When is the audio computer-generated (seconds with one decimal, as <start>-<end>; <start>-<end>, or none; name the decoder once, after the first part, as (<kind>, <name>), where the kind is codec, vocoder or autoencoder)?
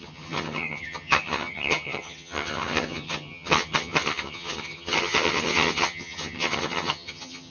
0.0-7.5 (vocoder, HiFi-GAN)